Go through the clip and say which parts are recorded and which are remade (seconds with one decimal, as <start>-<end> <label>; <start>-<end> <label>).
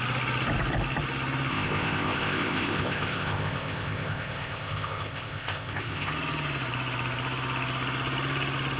0.0-1.5 recorded; 1.5-6.1 remade; 6.1-8.8 recorded